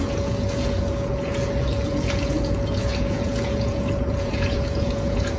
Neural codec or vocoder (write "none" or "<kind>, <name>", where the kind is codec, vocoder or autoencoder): vocoder, Vocos